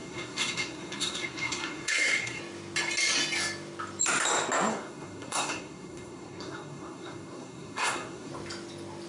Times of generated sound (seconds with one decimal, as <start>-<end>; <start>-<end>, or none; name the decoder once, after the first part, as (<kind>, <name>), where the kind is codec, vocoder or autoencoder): 0.0-2.4 (codec, SNAC); 4.7-8.3